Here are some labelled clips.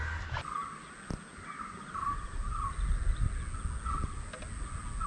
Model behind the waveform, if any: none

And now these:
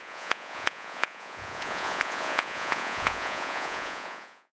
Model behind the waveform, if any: vocoder, Vocos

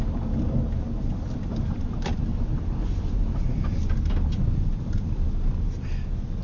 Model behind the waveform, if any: none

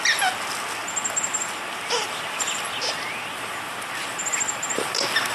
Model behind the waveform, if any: none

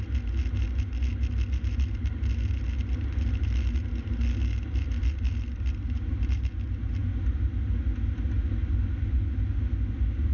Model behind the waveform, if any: none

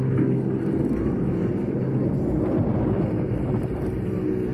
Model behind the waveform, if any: none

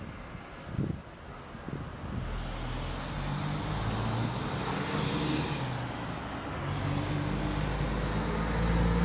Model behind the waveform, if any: none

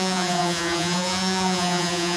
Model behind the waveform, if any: vocoder, Vocos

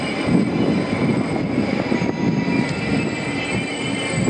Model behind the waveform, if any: none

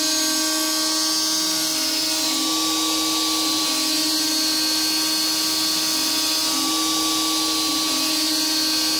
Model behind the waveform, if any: none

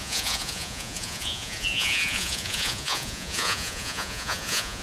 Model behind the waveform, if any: vocoder, Vocos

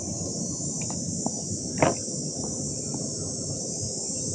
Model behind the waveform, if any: none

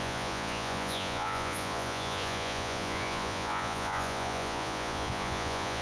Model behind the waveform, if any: vocoder, Vocos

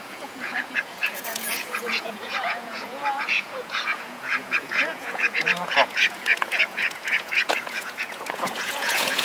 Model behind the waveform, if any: vocoder, Vocos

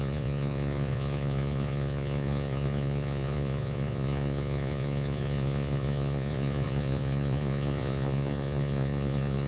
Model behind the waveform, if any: vocoder, Vocos